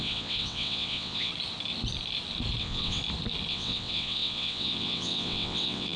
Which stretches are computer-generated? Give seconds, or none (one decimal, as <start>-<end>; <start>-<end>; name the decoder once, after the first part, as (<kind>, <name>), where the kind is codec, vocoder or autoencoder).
0.0-1.3 (vocoder, WaveNeXt); 2.6-3.0; 3.5-6.0